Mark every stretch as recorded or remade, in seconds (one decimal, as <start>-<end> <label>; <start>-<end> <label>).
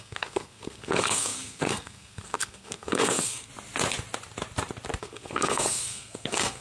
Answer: 0.0-3.5 remade; 3.5-5.0 recorded; 5.0-6.6 remade